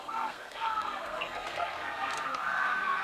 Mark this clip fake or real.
fake